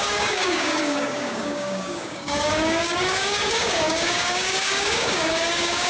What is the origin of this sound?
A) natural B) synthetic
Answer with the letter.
B